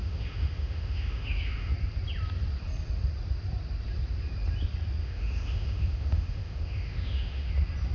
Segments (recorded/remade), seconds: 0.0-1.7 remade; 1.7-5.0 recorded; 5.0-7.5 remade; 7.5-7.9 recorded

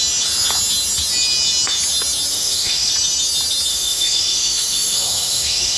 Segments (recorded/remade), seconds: 0.0-2.3 recorded; 2.3-2.9 remade; 2.9-3.7 recorded; 3.7-5.8 remade

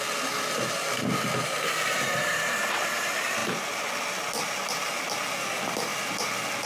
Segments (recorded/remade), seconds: 0.0-6.7 recorded

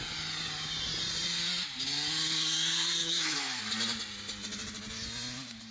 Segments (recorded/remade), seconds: 0.0-3.0 recorded; 3.0-3.6 remade; 3.6-5.7 recorded

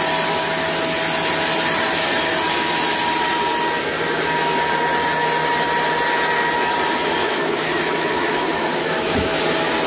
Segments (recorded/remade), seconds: 0.0-7.2 recorded; 7.2-9.4 remade; 9.4-9.9 recorded